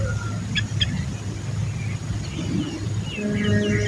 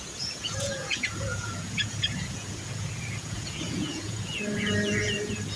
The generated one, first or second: second